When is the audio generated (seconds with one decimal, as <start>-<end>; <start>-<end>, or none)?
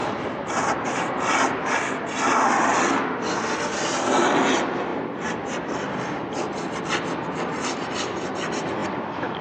none